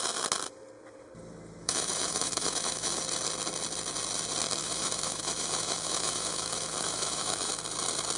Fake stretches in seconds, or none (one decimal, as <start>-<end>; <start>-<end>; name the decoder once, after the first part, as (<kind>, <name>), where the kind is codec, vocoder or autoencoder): 1.6-3.0 (autoencoder, DAC-VAE); 4.6-7.5